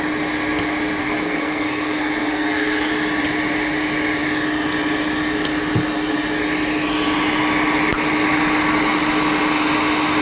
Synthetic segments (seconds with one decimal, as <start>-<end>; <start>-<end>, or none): 1.0-2.9